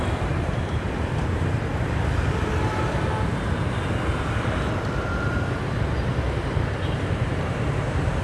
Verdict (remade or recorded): remade